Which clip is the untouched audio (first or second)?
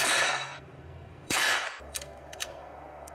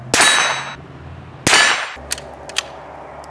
second